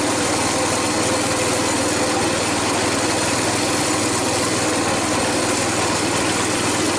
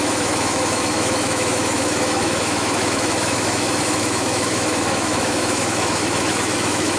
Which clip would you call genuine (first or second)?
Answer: first